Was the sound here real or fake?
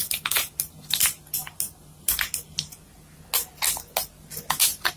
real